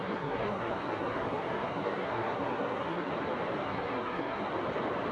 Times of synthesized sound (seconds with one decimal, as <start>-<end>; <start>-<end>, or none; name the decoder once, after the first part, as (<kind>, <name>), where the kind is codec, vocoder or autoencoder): 0.0-3.1 (codec, SNAC); 3.6-4.5